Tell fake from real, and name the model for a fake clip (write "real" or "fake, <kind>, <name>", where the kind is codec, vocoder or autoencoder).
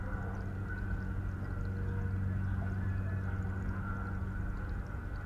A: real